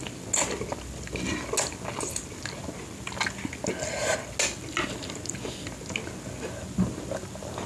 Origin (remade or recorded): recorded